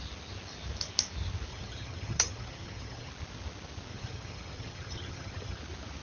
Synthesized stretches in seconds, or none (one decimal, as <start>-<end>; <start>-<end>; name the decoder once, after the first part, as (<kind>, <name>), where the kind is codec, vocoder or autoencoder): 1.5-3.1 (vocoder, HiFi-GAN); 3.9-5.6